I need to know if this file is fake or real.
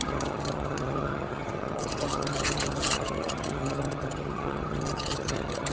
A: fake